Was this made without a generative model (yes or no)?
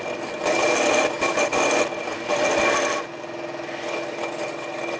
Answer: yes